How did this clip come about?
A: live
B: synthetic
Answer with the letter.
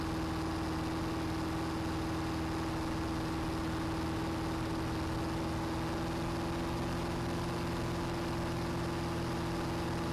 A